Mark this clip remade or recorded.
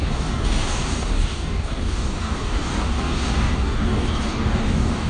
remade